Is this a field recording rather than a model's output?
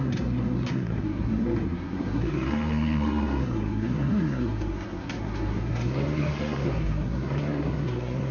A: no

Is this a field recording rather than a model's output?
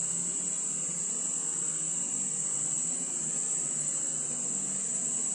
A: yes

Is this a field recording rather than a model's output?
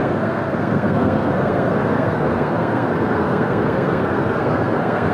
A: no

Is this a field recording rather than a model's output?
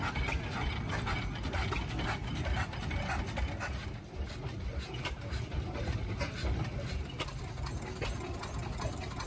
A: yes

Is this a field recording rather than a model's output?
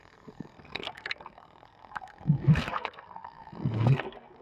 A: no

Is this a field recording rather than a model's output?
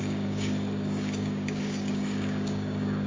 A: no